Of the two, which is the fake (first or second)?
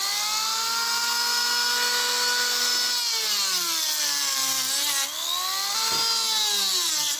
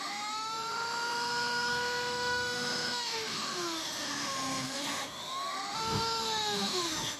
second